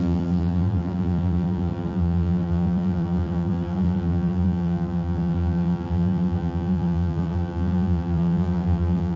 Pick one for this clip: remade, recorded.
remade